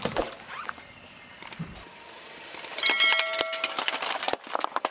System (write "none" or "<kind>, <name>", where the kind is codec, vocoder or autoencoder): none